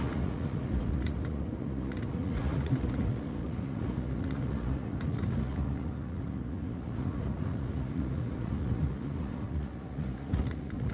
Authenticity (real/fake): fake